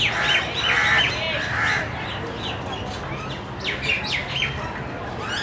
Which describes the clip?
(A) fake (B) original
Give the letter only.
B